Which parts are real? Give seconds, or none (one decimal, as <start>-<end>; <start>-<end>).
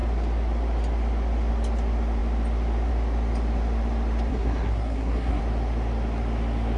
0.0-4.3; 5.4-6.8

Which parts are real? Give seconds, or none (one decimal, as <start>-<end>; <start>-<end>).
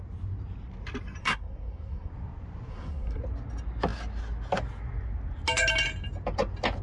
0.0-1.2; 2.1-2.7; 3.2-6.8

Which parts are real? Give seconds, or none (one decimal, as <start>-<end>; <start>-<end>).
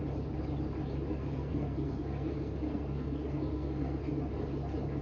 0.0-1.1; 4.1-5.0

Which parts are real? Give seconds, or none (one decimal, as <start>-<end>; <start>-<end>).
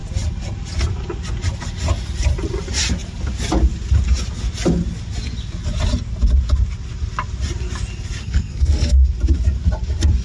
0.0-8.2; 9.1-10.2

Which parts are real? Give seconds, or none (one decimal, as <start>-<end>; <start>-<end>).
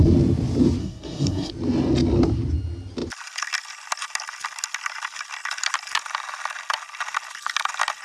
0.0-0.8; 1.5-8.0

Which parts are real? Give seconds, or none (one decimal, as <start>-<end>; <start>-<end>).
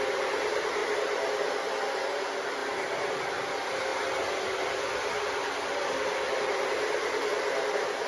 0.0-8.1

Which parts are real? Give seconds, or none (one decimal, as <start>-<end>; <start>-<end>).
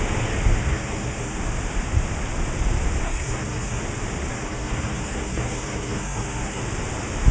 0.0-0.6; 1.4-3.0; 3.8-4.3; 6.6-7.3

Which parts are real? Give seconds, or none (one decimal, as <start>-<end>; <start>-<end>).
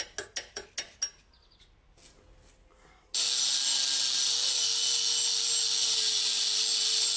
0.0-7.2